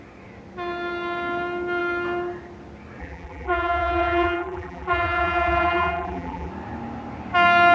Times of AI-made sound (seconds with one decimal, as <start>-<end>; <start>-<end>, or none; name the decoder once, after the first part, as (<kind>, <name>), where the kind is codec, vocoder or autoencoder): 3.0-6.5 (vocoder, BigVGAN v2)